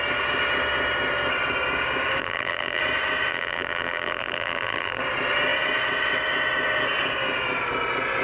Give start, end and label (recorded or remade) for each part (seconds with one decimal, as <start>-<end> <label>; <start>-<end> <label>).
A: 0.0-2.2 recorded; 2.2-2.8 remade; 2.8-3.3 recorded; 3.3-5.0 remade; 5.0-8.2 recorded